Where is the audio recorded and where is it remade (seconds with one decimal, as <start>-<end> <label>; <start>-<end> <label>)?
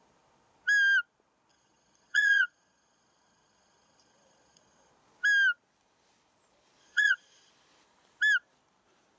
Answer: 0.0-1.5 recorded; 1.5-4.9 remade; 4.9-6.8 recorded; 6.8-7.5 remade; 7.5-9.2 recorded